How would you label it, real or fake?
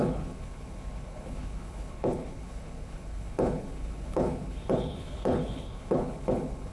fake